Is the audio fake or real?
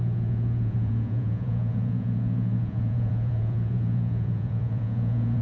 fake